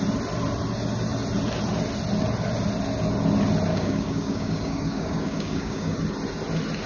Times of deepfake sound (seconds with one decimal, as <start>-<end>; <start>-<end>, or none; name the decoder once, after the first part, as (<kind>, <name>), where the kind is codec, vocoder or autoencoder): 3.7-6.0 (codec, DAC)